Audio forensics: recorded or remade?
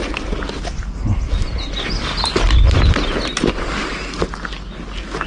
recorded